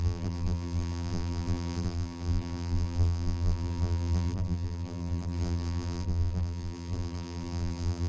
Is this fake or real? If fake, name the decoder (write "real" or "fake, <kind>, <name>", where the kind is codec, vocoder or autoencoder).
fake, vocoder, BigVGAN v2